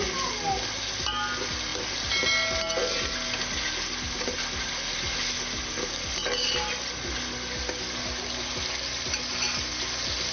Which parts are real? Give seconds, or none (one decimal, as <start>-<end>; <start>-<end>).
0.0-10.3